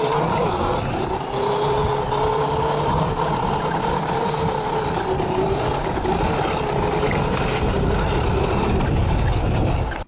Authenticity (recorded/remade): recorded